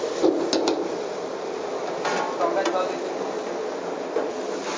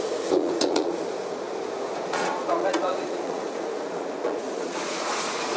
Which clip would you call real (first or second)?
first